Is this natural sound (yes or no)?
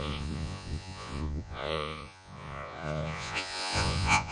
no